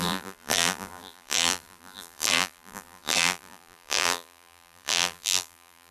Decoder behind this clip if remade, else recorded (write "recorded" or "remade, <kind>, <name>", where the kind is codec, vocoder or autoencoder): remade, vocoder, BigVGAN v2